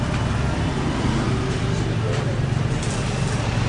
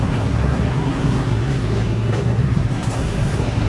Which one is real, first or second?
first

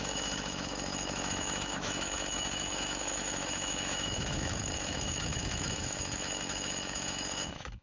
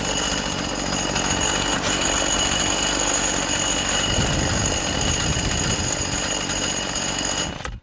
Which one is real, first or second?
second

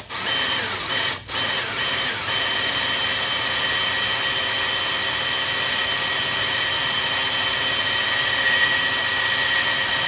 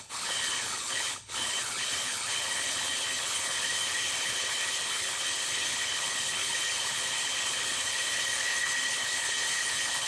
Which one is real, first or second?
first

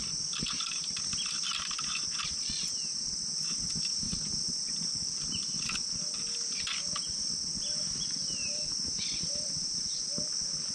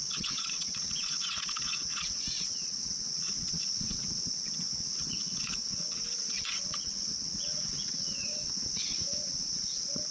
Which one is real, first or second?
first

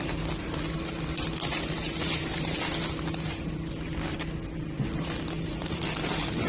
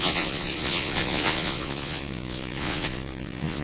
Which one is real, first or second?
first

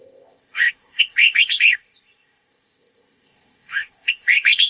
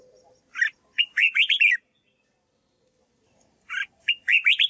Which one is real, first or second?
second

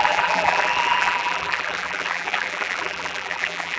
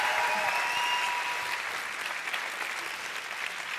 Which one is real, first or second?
second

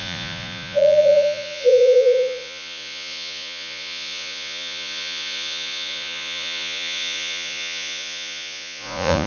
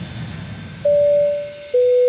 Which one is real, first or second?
second